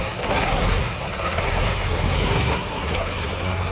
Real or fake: fake